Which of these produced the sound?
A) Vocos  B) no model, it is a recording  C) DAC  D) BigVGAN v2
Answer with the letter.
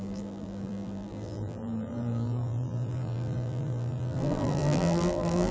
D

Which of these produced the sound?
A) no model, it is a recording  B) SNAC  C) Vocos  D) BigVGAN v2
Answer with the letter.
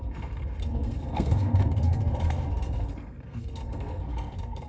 B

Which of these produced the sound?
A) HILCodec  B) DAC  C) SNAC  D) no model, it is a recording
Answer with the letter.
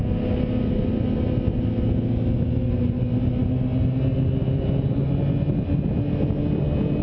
D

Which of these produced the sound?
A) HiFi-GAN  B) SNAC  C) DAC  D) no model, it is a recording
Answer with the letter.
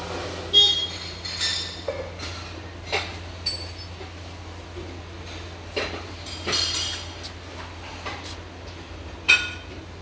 D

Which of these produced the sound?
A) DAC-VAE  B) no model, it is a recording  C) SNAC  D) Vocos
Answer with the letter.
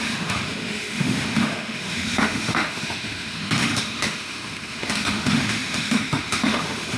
A